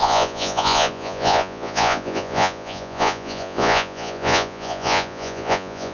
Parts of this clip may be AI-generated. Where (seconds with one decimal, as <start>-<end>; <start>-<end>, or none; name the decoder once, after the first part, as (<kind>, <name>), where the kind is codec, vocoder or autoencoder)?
0.0-5.9 (vocoder, Vocos)